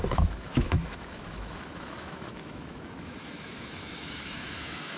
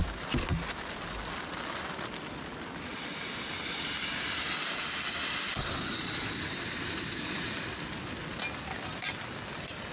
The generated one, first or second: first